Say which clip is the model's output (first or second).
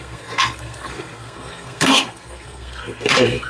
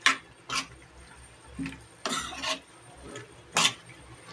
first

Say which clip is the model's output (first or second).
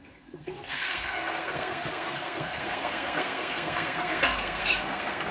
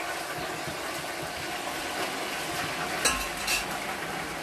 first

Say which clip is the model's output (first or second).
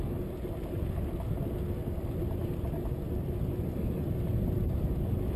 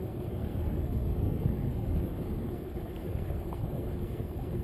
second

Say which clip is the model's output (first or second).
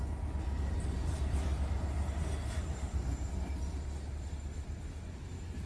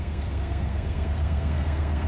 second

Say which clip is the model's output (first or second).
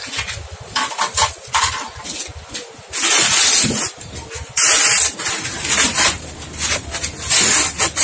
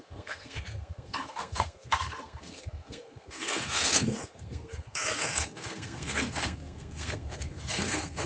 second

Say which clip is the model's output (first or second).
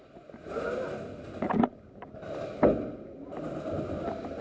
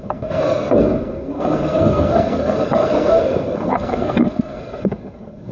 second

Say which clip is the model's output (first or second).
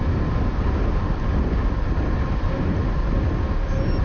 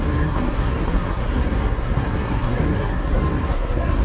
second